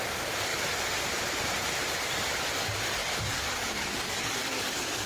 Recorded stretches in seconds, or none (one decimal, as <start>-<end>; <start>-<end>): 0.0-3.0